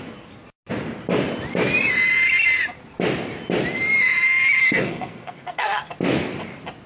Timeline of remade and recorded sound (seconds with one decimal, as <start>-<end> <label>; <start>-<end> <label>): 0.0-4.6 recorded; 4.6-5.9 remade; 5.9-6.9 recorded